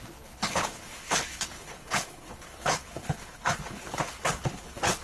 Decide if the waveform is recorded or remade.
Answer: remade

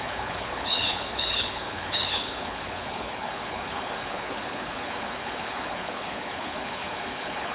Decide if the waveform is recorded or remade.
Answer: remade